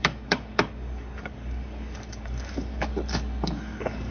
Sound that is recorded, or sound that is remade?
remade